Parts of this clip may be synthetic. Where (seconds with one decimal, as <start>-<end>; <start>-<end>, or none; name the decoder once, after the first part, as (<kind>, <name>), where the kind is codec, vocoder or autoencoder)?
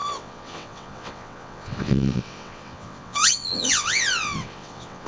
0.0-5.1 (vocoder, WaveNeXt)